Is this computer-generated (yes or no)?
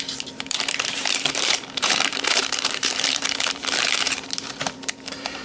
yes